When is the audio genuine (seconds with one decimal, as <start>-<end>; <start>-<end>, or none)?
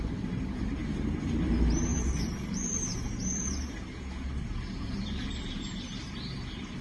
none